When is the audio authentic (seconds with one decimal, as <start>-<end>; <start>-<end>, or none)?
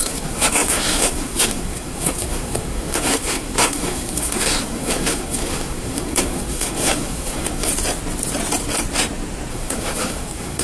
7.7-9.5